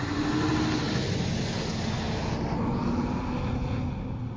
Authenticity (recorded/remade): recorded